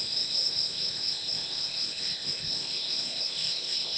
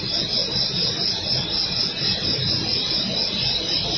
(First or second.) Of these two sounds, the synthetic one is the first